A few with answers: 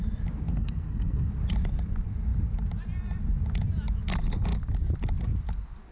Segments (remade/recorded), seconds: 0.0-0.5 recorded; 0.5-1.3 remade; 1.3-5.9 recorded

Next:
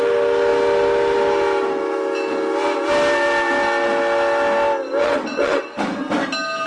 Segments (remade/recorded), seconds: 0.0-5.0 recorded; 5.0-5.6 remade; 5.6-6.7 recorded

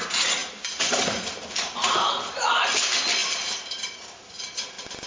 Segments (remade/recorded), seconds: 0.0-5.1 recorded

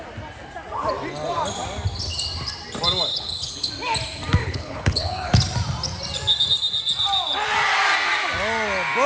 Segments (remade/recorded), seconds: 0.0-3.1 recorded; 3.1-3.7 remade; 3.7-4.4 recorded; 4.4-5.3 remade; 5.3-9.1 recorded

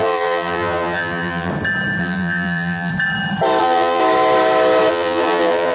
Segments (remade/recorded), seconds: 0.0-1.5 remade; 1.5-2.0 recorded; 2.0-2.9 remade; 2.9-3.6 recorded; 3.6-4.0 remade; 4.0-4.9 recorded; 4.9-5.7 remade

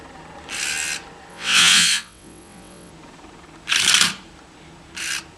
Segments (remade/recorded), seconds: 0.0-1.3 recorded; 1.3-2.9 remade; 2.9-5.4 recorded